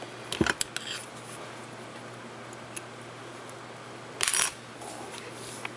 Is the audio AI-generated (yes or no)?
no